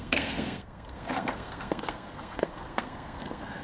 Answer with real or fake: fake